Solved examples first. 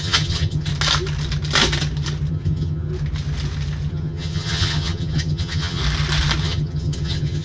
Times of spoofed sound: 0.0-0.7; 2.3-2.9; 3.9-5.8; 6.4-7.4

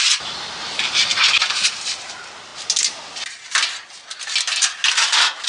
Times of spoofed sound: 0.0-1.1; 1.6-2.5; 4.9-5.5

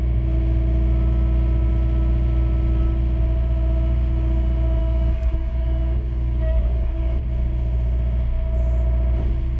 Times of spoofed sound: 4.8-7.2

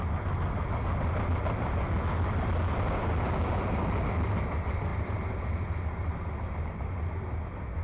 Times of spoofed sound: none

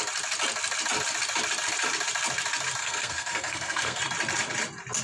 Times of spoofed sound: 2.8-4.0

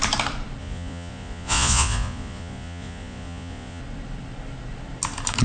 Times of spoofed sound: 0.6-3.8

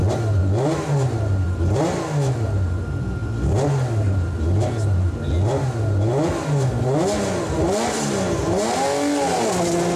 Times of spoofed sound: none

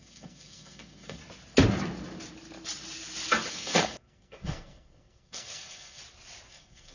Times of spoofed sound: 0.0-1.2; 3.5-6.0; 6.5-6.9